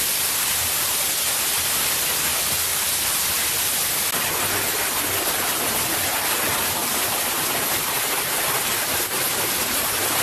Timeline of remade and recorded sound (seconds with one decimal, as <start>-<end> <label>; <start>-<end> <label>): 0.0-6.8 recorded; 6.8-7.4 remade; 7.4-10.2 recorded